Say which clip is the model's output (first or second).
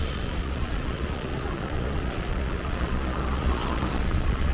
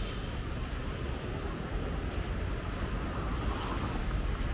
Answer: first